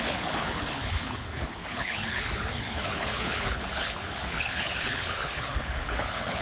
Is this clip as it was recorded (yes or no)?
no